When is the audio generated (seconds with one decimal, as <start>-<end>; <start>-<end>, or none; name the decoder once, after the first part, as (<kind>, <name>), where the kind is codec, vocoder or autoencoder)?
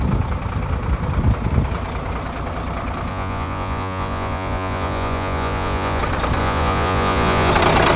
3.1-6.0 (vocoder, Vocos); 6.4-7.5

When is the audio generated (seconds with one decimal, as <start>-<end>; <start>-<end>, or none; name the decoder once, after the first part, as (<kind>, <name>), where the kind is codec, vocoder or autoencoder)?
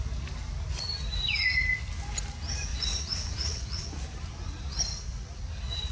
2.7-3.8 (vocoder, Vocos); 4.9-5.4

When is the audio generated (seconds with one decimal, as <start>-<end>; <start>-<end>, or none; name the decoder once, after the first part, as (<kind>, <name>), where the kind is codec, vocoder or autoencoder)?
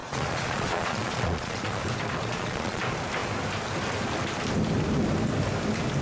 0.0-1.8 (vocoder, Vocos); 2.2-2.8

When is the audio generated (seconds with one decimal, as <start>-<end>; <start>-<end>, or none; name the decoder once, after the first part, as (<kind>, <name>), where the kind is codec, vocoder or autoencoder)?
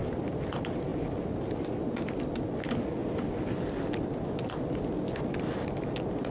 none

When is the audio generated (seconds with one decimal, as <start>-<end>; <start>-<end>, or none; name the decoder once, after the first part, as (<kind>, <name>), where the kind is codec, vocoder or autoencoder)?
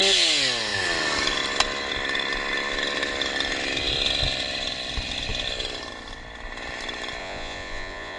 7.2-8.2 (vocoder, Vocos)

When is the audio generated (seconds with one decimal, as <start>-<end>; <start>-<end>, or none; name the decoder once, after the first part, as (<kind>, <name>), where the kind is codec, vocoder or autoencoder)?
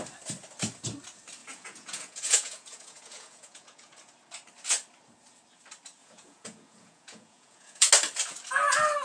1.4-4.1 (vocoder, Vocos); 6.0-7.9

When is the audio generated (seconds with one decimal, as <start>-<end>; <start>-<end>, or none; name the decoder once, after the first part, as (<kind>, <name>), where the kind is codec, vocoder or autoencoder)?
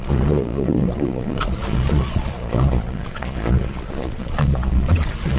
0.0-5.4 (vocoder, Vocos)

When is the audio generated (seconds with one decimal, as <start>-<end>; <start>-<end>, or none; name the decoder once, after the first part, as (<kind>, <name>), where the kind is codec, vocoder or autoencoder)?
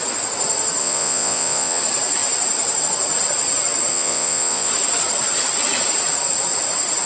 0.8-1.8 (vocoder, Vocos); 3.9-4.7